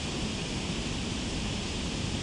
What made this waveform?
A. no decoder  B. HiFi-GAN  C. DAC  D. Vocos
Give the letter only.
A